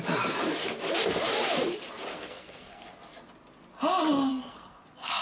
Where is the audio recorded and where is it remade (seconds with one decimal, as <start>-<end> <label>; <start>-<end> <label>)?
0.0-2.1 recorded; 2.1-2.9 remade; 2.9-4.3 recorded; 4.3-5.2 remade